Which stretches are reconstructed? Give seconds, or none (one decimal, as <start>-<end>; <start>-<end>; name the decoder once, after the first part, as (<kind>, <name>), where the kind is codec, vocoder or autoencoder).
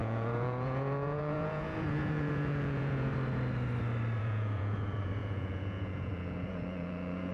0.0-3.1 (vocoder, Vocos); 4.2-7.3